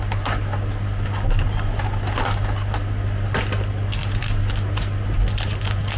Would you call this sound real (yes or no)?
yes